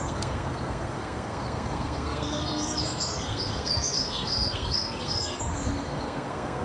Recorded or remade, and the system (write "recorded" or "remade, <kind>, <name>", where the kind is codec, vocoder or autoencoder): remade, codec, SNAC